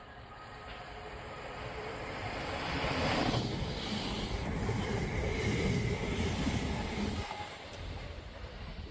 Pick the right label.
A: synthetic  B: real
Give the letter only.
A